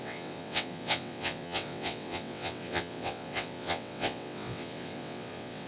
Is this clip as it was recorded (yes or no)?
no